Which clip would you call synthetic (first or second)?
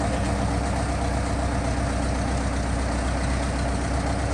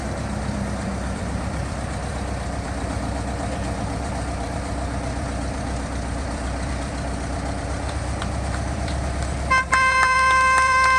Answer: second